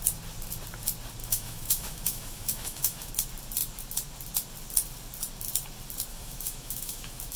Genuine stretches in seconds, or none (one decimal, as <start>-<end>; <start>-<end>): 0.0-1.2; 3.1-6.1